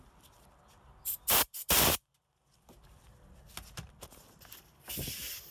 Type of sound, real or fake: real